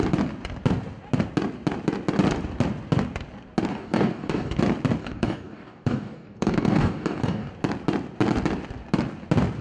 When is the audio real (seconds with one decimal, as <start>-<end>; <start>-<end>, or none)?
0.0-3.7; 4.6-5.0; 7.5-9.6